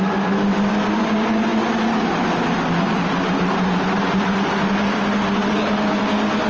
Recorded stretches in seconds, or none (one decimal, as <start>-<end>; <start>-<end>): 0.0-6.5

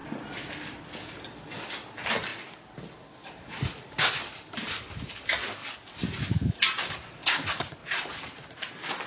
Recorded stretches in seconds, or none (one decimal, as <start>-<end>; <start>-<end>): 1.1-2.3; 3.3-9.1

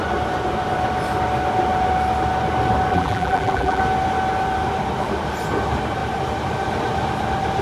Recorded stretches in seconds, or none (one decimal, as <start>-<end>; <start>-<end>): 0.0-2.9; 3.8-7.6

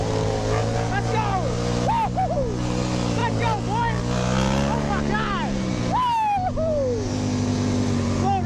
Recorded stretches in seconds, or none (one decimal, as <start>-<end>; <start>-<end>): 0.0-8.5

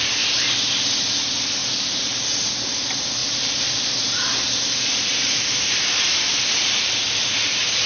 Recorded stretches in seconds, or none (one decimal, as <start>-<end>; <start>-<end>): 0.0-1.6; 2.5-3.2

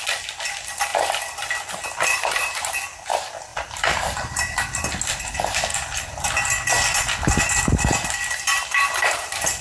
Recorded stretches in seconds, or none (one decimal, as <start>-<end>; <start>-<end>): 0.0-0.9; 1.7-3.5; 4.2-9.6

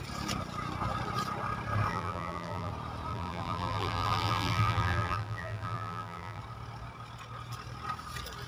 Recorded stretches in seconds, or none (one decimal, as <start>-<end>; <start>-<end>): 0.0-1.9; 2.7-3.1; 6.4-8.5

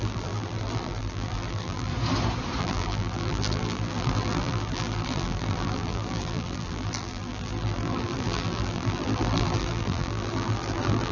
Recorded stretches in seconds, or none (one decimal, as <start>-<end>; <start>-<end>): 1.9-2.6